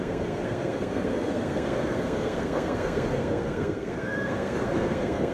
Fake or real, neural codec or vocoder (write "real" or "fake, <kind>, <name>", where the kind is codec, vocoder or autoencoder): fake, codec, SNAC